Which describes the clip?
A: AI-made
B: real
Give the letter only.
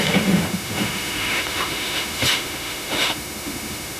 A